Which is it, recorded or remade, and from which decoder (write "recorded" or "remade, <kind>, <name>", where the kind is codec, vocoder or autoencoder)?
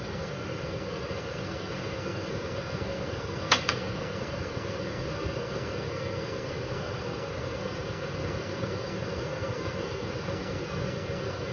remade, codec, SNAC